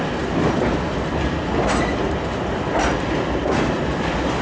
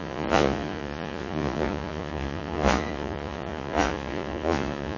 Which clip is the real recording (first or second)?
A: first